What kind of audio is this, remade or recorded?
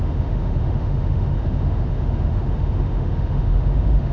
remade